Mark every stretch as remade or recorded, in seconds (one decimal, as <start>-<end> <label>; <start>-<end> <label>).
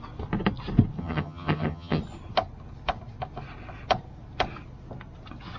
0.0-1.0 recorded; 1.0-2.0 remade; 2.0-5.6 recorded